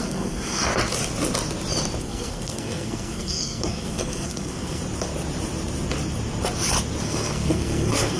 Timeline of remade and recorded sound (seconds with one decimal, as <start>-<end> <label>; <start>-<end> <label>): 0.0-0.7 remade; 0.7-2.0 recorded; 2.0-4.8 remade; 4.8-7.0 recorded; 7.0-8.2 remade